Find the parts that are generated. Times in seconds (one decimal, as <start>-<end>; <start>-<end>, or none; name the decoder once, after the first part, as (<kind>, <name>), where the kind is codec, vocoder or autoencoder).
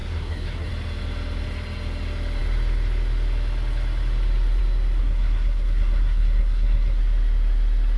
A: 0.0-0.7 (codec, SNAC); 5.0-7.0